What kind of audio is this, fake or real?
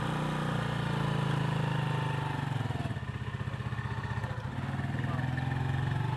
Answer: real